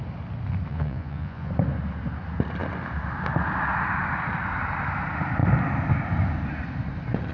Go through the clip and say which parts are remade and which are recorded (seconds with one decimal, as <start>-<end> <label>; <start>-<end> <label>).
0.0-0.7 recorded; 0.7-1.5 remade; 1.5-7.3 recorded